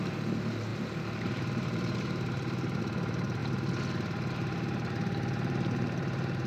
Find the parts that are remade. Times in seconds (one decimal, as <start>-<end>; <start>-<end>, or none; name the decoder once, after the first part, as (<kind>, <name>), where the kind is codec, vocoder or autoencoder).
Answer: 0.0-3.4 (vocoder, BigVGAN v2); 4.3-6.5